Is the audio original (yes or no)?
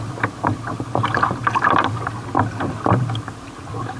yes